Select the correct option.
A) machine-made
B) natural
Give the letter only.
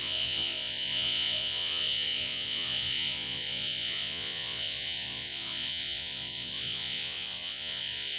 A